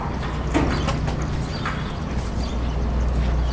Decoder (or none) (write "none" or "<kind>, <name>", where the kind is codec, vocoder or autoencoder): none